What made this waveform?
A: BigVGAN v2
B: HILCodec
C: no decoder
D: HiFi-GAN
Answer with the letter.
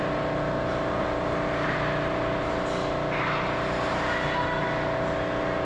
C